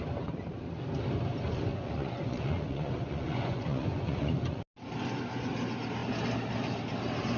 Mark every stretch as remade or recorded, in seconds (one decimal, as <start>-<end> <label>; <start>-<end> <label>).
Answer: 0.0-1.7 recorded; 1.7-4.6 remade; 4.6-7.4 recorded